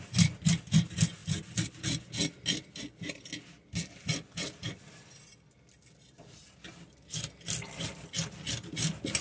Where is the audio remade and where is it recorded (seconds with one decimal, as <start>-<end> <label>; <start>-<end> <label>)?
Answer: 0.0-9.2 recorded